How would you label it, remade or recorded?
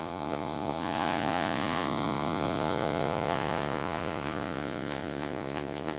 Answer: remade